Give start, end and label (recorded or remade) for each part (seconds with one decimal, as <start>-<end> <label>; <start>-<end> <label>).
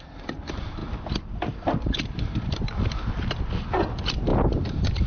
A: 0.0-5.1 recorded